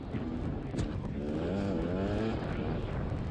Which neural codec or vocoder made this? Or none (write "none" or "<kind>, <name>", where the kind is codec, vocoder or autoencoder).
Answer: none